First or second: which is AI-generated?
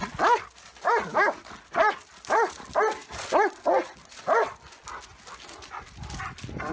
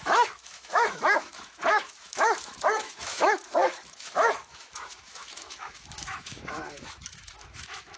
second